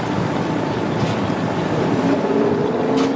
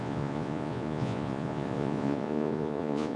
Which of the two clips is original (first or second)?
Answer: first